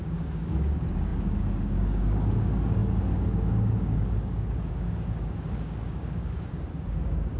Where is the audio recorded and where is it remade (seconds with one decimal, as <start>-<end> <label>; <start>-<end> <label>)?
0.0-7.4 remade